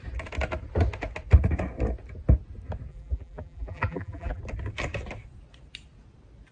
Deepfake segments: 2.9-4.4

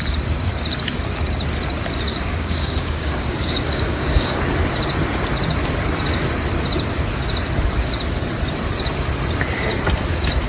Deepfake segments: 2.1-4.4

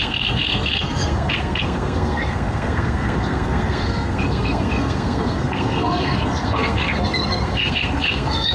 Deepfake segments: 0.0-8.5

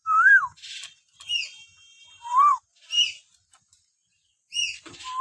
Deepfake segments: 0.0-0.9; 2.0-2.6

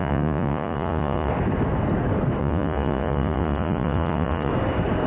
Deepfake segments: 0.0-1.3; 2.4-4.5

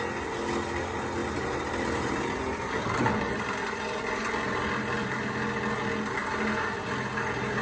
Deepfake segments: 1.2-2.7

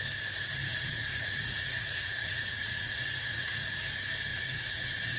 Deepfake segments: 0.7-3.8; 4.3-5.2